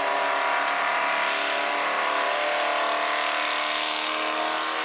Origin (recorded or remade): recorded